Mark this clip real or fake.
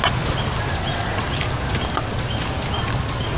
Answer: real